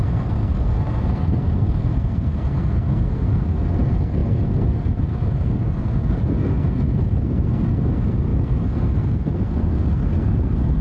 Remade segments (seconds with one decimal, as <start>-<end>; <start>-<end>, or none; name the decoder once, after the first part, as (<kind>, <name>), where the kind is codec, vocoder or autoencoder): 0.0-10.8 (codec, SNAC)